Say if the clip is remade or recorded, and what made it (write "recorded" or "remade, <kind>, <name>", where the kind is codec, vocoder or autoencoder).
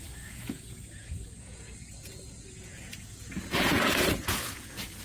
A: remade, vocoder, Vocos